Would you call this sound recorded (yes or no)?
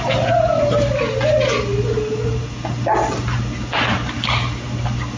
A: yes